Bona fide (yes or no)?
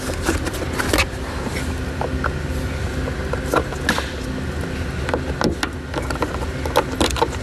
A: yes